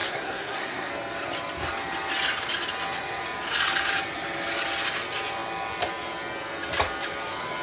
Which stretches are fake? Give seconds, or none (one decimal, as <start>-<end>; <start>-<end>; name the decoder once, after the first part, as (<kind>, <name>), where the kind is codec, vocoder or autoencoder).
0.0-0.9 (codec, SNAC)